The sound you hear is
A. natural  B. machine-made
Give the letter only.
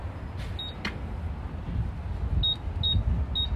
A